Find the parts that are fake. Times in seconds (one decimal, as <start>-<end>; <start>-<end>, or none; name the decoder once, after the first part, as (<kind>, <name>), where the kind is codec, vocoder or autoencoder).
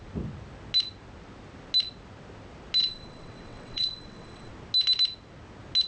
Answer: 2.8-4.5 (vocoder, WaveNeXt)